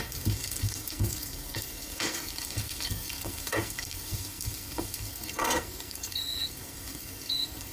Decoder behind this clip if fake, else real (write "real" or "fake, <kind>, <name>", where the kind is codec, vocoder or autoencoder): fake, codec, SNAC